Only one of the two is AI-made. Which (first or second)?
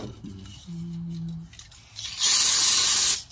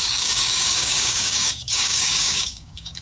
second